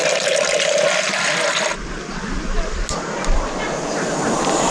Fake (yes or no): no